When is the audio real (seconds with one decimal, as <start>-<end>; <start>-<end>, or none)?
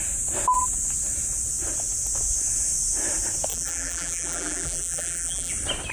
0.0-3.5; 5.5-5.9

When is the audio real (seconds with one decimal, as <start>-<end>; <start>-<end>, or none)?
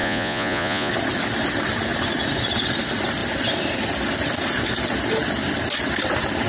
0.9-6.5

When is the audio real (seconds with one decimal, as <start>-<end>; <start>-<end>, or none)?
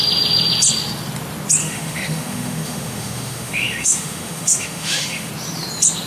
0.0-1.6; 5.3-6.1